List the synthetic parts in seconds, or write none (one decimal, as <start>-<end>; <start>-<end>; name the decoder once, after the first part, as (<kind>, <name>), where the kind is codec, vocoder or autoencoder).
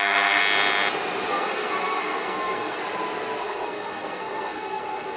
0.0-0.4 (codec, SNAC); 1.3-2.8; 3.4-5.2